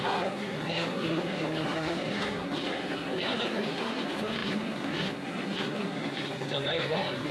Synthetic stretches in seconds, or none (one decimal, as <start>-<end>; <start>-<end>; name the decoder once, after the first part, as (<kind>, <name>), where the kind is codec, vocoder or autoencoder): 0.0-7.3 (codec, SNAC)